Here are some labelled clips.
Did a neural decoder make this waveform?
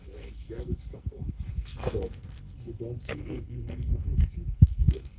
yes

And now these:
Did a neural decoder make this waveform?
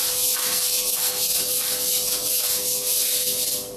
yes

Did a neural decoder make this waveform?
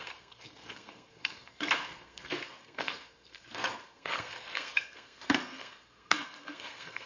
yes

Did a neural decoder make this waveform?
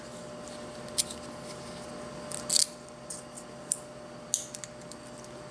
no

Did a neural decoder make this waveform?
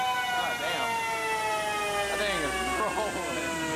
no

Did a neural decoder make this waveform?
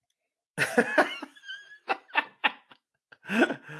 no